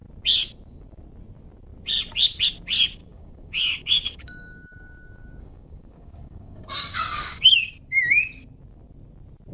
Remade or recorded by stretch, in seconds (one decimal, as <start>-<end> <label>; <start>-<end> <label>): 0.0-3.0 recorded; 3.0-7.7 remade; 7.7-9.5 recorded